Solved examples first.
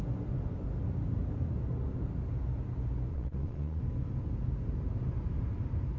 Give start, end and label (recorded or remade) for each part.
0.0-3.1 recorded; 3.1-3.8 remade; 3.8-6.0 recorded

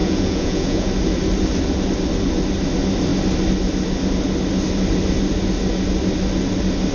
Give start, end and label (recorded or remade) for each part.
0.0-0.9 remade; 0.9-6.9 recorded

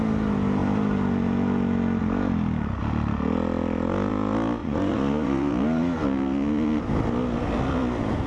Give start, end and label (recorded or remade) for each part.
0.0-4.6 recorded; 4.6-5.5 remade; 5.5-8.3 recorded

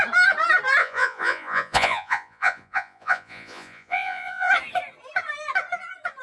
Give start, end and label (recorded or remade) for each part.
0.0-0.8 recorded; 0.8-4.5 remade; 4.5-6.2 recorded

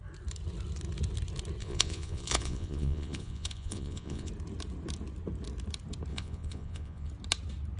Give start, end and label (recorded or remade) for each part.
0.0-1.6 recorded; 1.6-4.3 remade; 4.3-6.1 recorded; 6.1-7.1 remade; 7.1-7.8 recorded

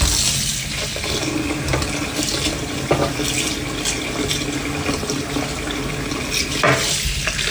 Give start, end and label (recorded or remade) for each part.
0.0-7.5 recorded

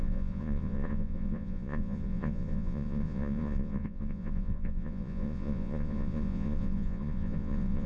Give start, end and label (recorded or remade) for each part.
0.0-7.9 remade